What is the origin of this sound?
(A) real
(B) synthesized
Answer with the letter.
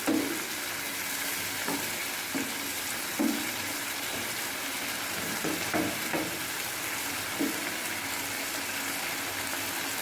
A